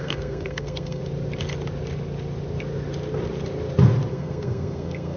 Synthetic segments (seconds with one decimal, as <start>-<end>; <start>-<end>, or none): 0.0-1.0; 4.1-5.2

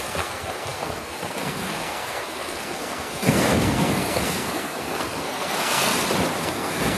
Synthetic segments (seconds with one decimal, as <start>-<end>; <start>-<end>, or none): 0.0-5.9; 6.4-7.0